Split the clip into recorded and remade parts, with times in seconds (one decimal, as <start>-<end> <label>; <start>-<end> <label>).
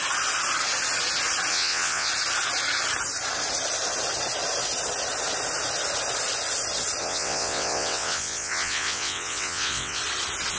0.0-1.5 recorded; 1.5-2.1 remade; 2.1-7.0 recorded; 7.0-10.0 remade; 10.0-10.6 recorded